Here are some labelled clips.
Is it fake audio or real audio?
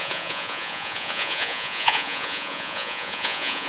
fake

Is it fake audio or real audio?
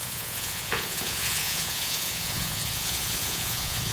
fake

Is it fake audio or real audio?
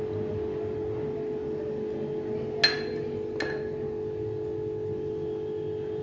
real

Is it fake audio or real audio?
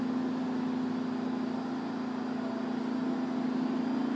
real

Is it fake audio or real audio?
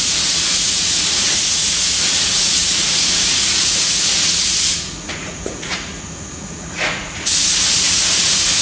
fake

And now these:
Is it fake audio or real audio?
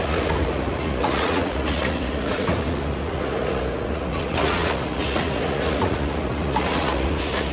fake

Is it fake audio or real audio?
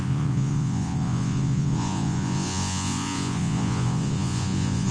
fake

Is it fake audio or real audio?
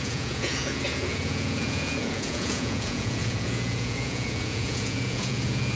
fake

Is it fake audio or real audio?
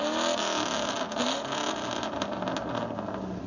real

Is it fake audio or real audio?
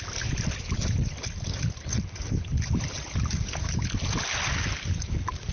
real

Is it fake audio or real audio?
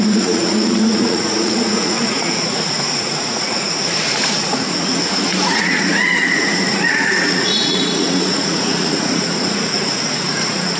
fake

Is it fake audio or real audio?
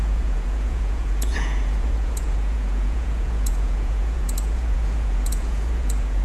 fake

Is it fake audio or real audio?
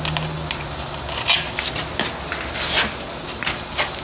real